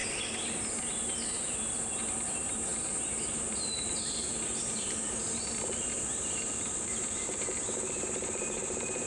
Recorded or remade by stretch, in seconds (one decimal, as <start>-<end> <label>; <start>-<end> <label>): 0.0-9.1 remade